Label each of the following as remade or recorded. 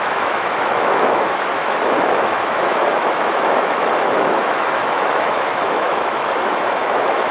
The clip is remade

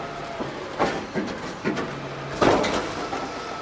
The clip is recorded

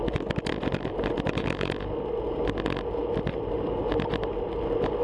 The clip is recorded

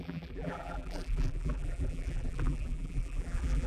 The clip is remade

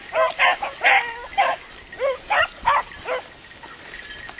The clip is recorded